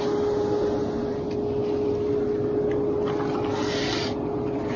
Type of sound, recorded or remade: recorded